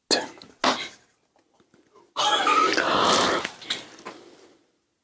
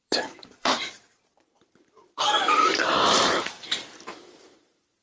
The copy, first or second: second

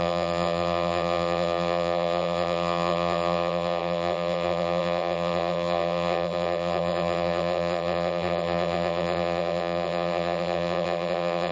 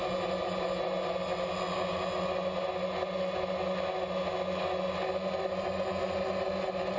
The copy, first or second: first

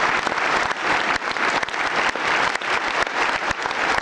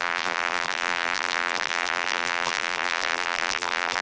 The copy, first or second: second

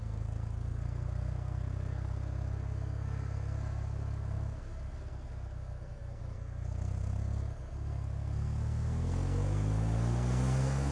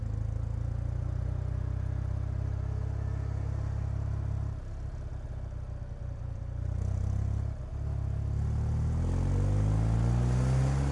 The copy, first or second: first